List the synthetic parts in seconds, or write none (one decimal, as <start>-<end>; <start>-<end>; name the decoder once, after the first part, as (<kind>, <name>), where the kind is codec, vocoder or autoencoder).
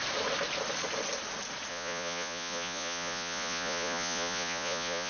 1.7-5.1 (vocoder, Vocos)